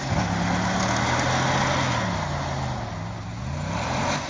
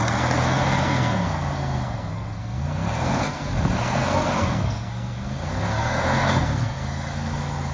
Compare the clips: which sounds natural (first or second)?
first